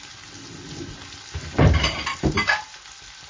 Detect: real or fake real